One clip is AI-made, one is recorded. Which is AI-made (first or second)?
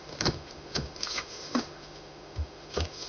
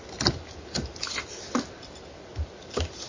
first